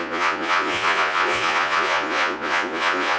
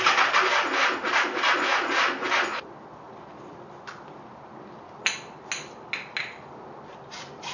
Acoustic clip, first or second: second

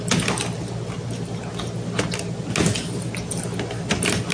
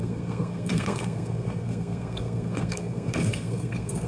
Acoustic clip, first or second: first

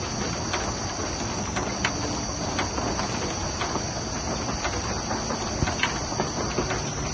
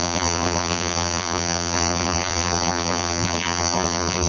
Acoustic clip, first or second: first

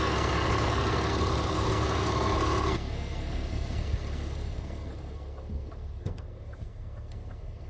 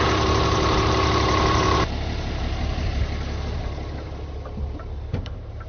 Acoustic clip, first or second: second